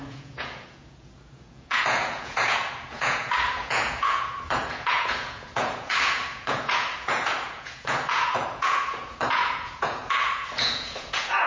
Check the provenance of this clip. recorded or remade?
remade